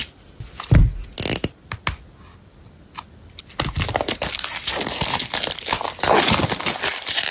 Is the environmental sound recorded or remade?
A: recorded